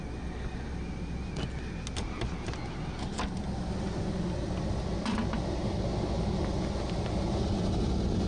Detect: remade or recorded recorded